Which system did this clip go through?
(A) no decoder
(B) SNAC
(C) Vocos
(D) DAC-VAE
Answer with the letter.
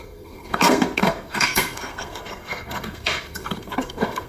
B